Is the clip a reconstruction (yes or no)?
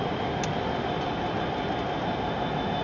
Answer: no